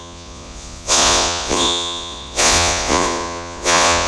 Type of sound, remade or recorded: remade